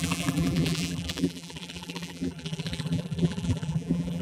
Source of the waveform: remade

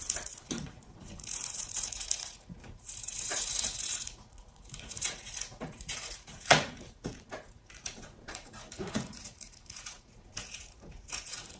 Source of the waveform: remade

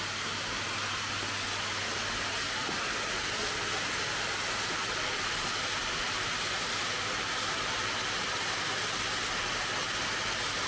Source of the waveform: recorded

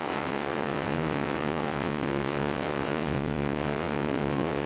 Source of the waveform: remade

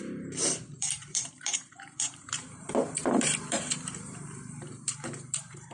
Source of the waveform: remade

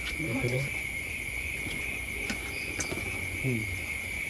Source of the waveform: remade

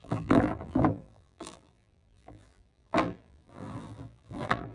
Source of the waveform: remade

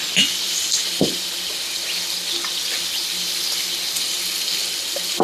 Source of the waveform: recorded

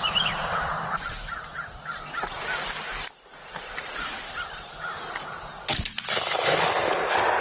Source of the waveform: recorded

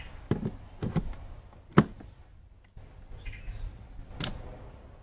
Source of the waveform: recorded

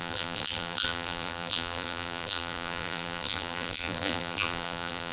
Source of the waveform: remade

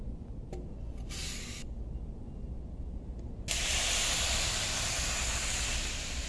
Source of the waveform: recorded